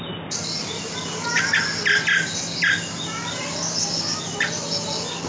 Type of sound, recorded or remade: recorded